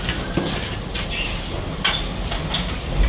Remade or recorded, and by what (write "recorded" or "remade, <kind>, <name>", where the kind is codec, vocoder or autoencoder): recorded